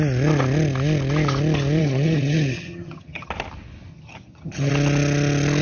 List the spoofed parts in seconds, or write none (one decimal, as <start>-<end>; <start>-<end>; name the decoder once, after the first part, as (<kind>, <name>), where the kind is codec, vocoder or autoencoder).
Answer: 1.8-3.3 (vocoder, HiFi-GAN); 3.9-4.7